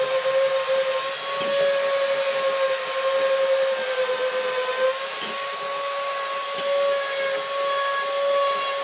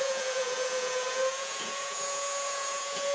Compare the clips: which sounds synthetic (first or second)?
second